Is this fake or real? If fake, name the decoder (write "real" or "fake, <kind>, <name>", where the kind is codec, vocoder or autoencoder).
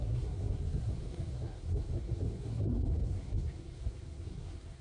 fake, codec, SNAC